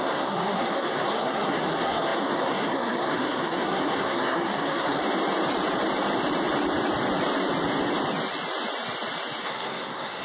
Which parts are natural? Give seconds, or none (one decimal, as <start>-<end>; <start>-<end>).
5.0-9.4